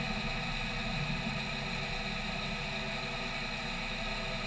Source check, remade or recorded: recorded